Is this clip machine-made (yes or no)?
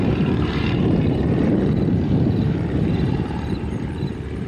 yes